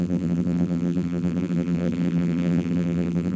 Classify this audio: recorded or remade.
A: remade